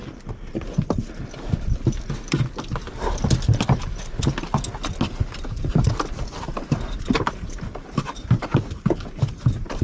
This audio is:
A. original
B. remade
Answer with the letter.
A